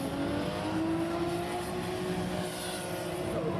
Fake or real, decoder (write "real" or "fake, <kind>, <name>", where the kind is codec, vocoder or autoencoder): real